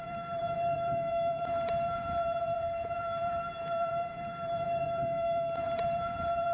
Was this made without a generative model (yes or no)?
no